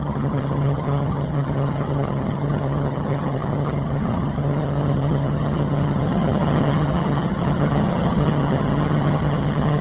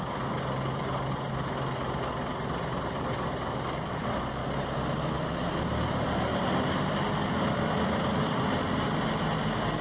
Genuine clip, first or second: second